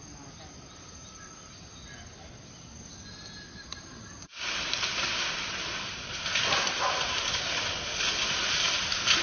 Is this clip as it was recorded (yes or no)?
yes